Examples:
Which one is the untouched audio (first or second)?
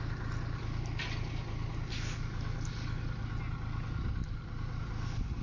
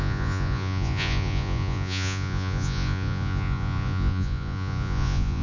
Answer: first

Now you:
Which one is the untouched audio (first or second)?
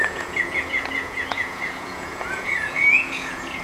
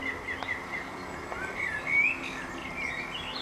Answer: second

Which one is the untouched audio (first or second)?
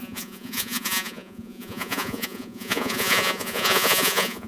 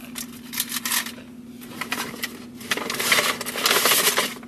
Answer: second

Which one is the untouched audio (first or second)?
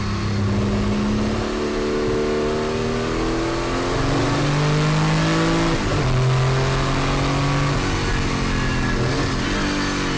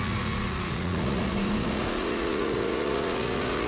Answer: first